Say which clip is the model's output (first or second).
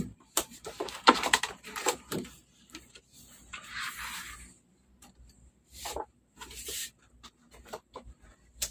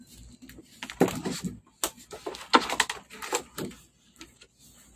first